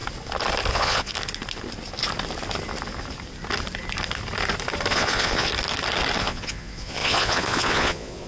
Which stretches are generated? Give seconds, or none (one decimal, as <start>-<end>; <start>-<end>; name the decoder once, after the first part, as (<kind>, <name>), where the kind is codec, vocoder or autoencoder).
0.7-1.1 (vocoder, Vocos); 4.9-5.5; 6.2-8.3